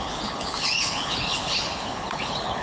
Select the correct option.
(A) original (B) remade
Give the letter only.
B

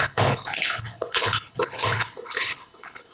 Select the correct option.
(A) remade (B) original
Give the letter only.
A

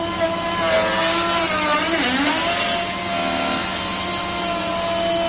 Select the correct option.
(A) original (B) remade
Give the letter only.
A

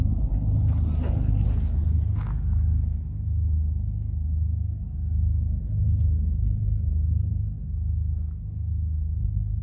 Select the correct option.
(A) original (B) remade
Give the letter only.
A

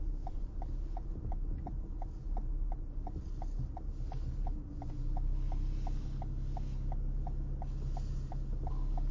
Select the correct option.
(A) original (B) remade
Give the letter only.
A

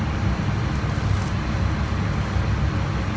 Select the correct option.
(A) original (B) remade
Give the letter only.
A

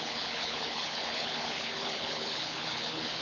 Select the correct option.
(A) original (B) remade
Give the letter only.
B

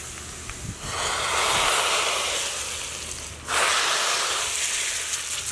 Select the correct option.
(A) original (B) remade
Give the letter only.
A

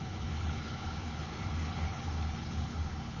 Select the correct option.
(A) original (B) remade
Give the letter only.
B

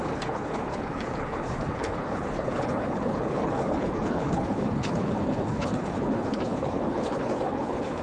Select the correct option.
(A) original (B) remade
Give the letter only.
B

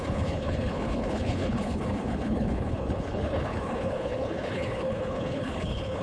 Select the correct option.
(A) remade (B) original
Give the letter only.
A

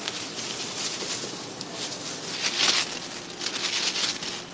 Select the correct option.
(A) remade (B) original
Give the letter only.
B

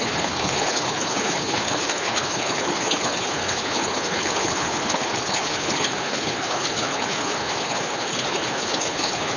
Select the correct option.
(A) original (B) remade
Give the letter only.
B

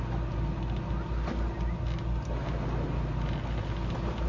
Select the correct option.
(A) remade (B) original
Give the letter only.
B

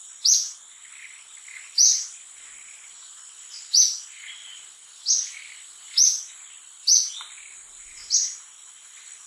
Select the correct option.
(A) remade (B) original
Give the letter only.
B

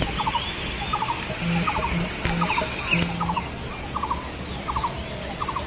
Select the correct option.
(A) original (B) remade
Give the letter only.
A